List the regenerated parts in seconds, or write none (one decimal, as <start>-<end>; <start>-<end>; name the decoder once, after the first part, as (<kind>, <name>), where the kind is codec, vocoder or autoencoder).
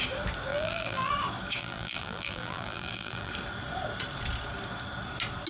0.5-1.1 (vocoder, BigVGAN v2); 1.6-3.3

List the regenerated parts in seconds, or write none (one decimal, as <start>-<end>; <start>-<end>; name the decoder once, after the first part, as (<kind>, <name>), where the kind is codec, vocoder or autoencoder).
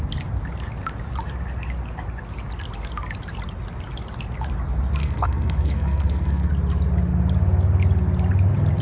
5.0-6.5 (codec, SNAC)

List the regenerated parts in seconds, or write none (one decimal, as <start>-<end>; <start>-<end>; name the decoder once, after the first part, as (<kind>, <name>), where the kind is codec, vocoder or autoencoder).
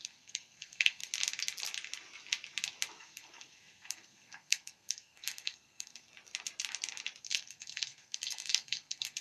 0.0-1.0 (codec, SNAC); 3.0-6.1; 7.2-9.2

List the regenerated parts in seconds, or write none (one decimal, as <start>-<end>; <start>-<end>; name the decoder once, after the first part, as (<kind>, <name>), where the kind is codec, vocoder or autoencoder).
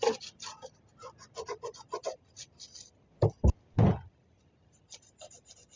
none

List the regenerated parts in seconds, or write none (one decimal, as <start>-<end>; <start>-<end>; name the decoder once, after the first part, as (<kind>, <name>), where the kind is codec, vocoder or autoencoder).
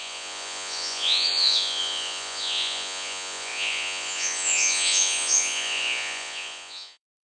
0.0-7.2 (vocoder, Vocos)